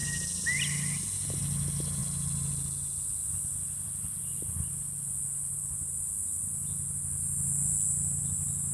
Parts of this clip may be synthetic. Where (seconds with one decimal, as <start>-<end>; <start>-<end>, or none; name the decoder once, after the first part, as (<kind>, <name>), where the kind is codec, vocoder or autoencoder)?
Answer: none